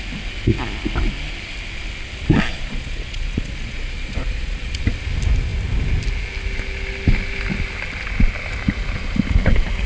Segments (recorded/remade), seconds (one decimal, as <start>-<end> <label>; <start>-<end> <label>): 0.0-2.5 recorded; 2.5-4.8 remade; 4.8-9.9 recorded